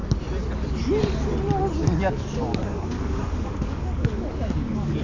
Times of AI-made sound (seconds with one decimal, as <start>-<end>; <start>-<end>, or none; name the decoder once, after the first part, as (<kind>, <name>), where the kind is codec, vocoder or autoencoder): 2.0-5.0 (codec, DAC)